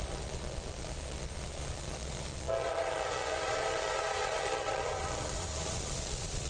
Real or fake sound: fake